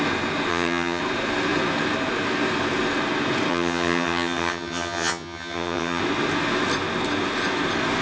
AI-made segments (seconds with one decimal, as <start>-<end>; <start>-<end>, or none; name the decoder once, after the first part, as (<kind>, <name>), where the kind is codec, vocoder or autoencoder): 0.5-1.0 (vocoder, HiFi-GAN); 3.5-6.0